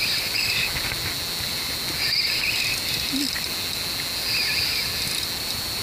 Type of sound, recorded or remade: recorded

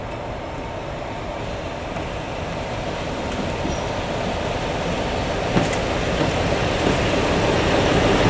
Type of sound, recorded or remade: recorded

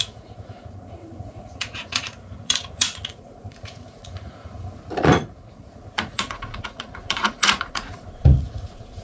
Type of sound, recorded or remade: remade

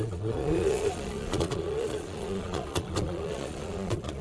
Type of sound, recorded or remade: remade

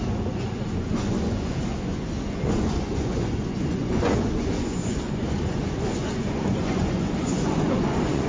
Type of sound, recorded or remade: remade